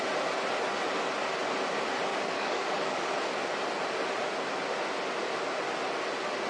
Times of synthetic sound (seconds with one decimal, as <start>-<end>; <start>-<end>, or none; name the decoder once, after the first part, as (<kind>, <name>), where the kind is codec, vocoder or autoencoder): 2.1-3.1 (codec, DAC)